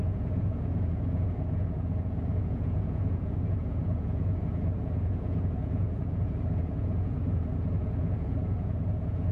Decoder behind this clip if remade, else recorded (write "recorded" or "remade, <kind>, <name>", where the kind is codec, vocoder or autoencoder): remade, vocoder, Vocos